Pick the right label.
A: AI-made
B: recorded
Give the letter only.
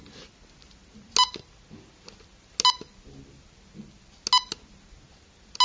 B